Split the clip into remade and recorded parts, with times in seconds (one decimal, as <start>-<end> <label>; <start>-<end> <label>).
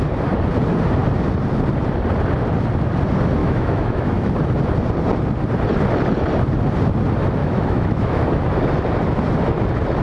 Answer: 0.0-3.4 recorded; 3.4-4.3 remade; 4.3-7.4 recorded; 7.4-8.4 remade; 8.4-10.0 recorded